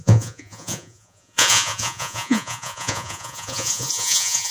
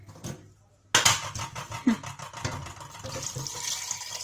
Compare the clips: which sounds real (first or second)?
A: second